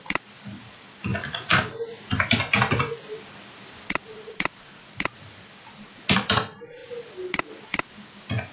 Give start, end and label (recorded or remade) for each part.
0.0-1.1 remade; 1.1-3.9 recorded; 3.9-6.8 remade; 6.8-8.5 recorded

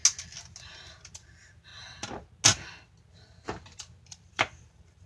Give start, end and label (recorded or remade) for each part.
0.0-0.9 recorded; 0.9-1.7 remade; 1.7-4.3 recorded; 4.3-5.1 remade

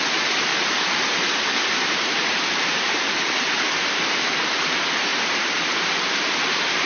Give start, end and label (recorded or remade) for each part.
0.0-0.5 recorded; 0.5-4.6 remade; 4.6-5.1 recorded; 5.1-6.9 remade

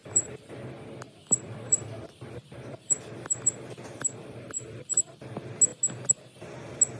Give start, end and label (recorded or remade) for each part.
0.0-0.7 remade; 0.7-1.2 recorded; 1.2-4.6 remade; 4.6-7.0 recorded

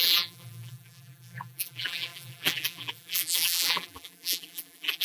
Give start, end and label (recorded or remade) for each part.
0.0-5.0 remade

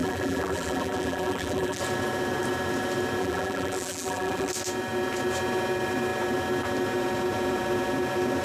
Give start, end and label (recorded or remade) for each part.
0.0-1.8 remade; 1.8-3.2 recorded; 3.2-4.5 remade; 4.5-8.4 recorded